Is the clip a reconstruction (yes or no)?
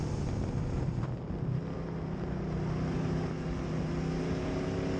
no